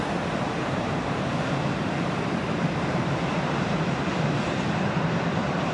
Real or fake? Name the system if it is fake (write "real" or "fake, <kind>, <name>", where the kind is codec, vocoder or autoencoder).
fake, vocoder, BigVGAN v2